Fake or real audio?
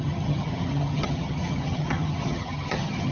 fake